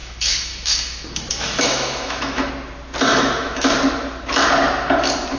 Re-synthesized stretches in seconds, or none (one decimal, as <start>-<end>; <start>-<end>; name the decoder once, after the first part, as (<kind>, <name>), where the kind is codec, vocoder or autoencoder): 0.0-2.5 (autoencoder, DAC-VAE); 3.1-3.7